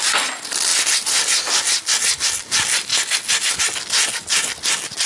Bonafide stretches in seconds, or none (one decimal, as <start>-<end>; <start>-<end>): 0.0-5.1